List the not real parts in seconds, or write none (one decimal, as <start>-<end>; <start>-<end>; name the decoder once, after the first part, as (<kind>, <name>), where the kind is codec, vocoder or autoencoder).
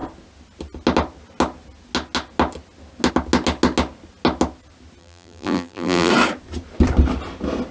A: 5.0-6.1 (vocoder, BigVGAN v2)